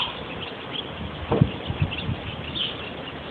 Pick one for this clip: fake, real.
real